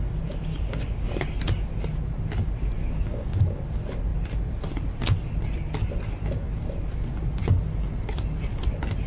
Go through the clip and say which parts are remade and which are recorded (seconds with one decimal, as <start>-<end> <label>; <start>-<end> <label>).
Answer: 0.0-0.5 recorded; 0.5-1.1 remade; 1.1-2.8 recorded; 2.8-3.4 remade; 3.4-9.1 recorded